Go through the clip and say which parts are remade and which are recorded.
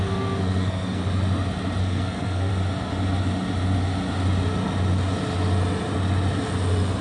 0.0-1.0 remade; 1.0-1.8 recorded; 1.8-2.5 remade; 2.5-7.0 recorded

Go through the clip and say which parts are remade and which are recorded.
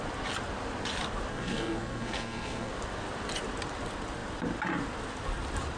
0.0-1.3 recorded; 1.3-2.7 remade; 2.7-5.8 recorded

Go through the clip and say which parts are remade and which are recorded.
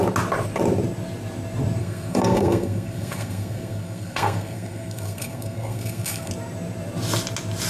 0.0-1.8 recorded; 1.8-6.3 remade; 6.3-7.7 recorded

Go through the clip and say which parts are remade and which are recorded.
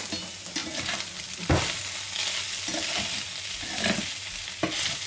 0.0-5.1 recorded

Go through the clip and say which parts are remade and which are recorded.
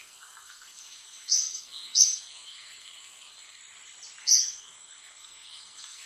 0.0-3.6 remade; 3.6-4.2 recorded; 4.2-6.1 remade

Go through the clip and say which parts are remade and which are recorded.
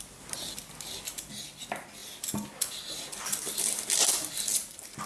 0.0-5.1 recorded